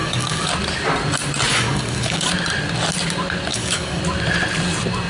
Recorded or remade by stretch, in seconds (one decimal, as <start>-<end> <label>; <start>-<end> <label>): 0.0-0.5 remade; 0.5-1.5 recorded; 1.5-2.3 remade; 2.3-3.5 recorded; 3.5-4.0 remade; 4.0-5.1 recorded